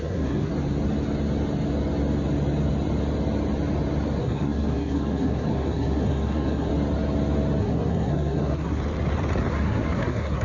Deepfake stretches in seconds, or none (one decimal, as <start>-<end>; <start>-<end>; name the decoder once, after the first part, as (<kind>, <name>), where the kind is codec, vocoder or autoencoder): 0.0-0.5 (codec, SNAC); 4.2-6.7; 7.6-8.8; 9.5-10.4